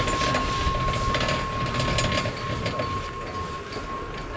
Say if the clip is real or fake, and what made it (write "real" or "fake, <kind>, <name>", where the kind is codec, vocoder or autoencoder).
real